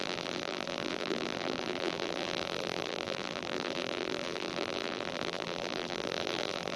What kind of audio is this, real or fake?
fake